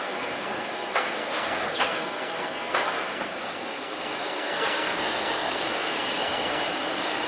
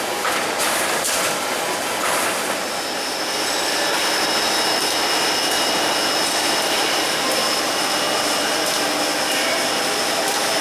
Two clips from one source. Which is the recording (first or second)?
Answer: second